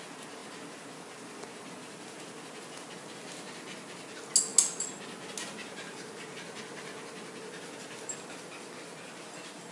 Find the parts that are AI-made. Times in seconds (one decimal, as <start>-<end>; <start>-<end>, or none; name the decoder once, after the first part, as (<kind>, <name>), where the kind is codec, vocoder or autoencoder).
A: none